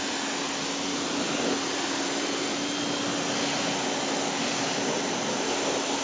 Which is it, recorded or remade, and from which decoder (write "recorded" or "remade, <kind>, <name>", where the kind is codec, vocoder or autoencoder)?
recorded